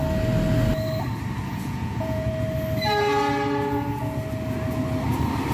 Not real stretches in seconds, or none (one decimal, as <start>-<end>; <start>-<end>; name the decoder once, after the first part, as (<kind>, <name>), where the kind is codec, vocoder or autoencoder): 1.5-2.3 (vocoder, Vocos)